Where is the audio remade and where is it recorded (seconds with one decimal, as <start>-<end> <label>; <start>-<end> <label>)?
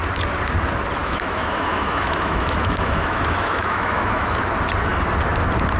0.0-1.0 recorded; 1.0-4.5 remade; 4.5-5.8 recorded